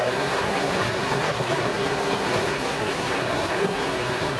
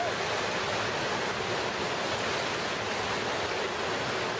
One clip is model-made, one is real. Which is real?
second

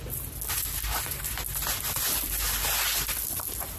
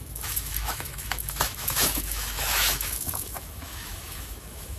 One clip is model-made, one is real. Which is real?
first